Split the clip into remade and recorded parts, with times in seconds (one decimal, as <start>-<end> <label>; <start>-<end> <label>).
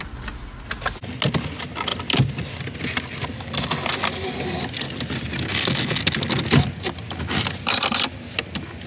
0.0-8.9 recorded